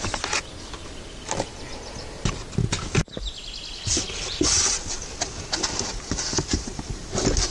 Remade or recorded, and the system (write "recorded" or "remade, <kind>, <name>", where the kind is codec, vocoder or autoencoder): recorded